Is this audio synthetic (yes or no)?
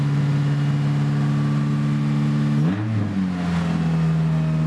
no